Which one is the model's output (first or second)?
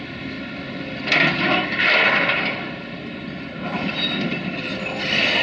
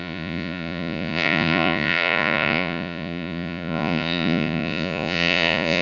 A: second